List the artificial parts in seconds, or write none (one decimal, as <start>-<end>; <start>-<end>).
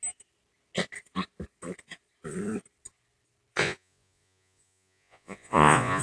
3.6-6.0